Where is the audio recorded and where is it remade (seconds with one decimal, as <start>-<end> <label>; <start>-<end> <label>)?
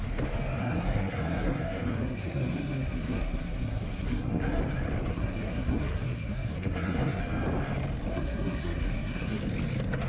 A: 0.0-0.6 recorded; 0.6-4.6 remade; 4.6-5.1 recorded; 5.1-7.2 remade; 7.2-8.1 recorded; 8.1-9.4 remade; 9.4-10.1 recorded